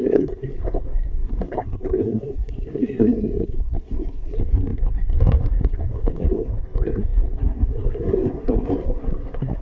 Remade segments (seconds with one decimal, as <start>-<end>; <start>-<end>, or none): 0.0-9.6